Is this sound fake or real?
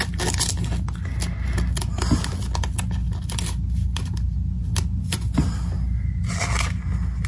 real